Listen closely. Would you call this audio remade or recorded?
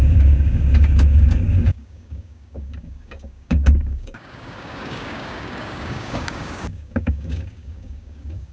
remade